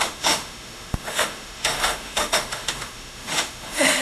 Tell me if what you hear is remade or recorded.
remade